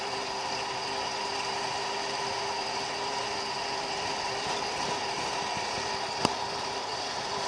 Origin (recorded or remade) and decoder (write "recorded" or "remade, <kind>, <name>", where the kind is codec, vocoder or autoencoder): recorded